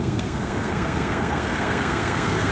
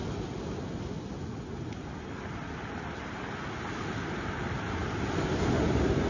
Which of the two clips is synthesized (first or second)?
first